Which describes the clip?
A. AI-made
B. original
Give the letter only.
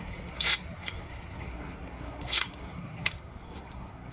A